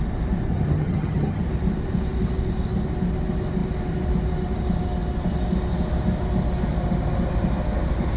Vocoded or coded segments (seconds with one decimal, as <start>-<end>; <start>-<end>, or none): 0.5-1.4